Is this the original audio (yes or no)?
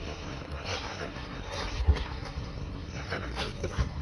no